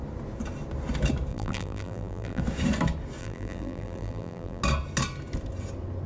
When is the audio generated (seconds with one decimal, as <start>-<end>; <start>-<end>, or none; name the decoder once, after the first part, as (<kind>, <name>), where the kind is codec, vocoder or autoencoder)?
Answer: 1.3-2.4 (vocoder, BigVGAN v2); 3.2-4.6